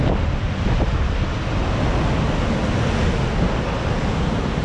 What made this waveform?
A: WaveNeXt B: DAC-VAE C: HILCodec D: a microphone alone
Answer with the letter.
D